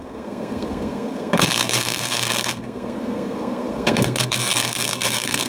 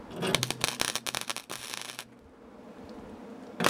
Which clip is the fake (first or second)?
first